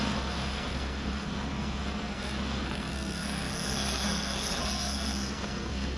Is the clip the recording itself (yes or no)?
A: no